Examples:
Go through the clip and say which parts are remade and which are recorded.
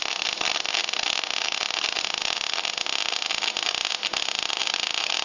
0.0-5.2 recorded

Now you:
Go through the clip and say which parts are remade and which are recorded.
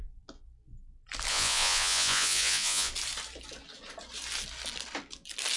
0.0-1.3 recorded; 1.3-2.9 remade; 2.9-5.6 recorded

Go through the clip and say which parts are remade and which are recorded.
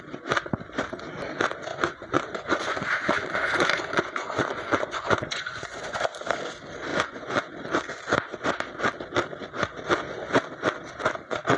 0.0-1.7 recorded; 1.7-6.0 remade; 6.0-6.9 recorded; 6.9-7.5 remade; 7.5-11.6 recorded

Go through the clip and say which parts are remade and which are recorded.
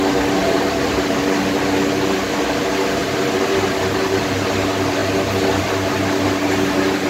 0.0-0.4 recorded; 0.4-1.2 remade; 1.2-3.0 recorded; 3.0-3.6 remade; 3.6-7.1 recorded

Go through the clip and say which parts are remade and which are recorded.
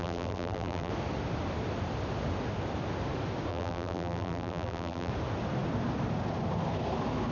0.0-0.9 remade; 0.9-3.5 recorded; 3.5-5.1 remade; 5.1-7.3 recorded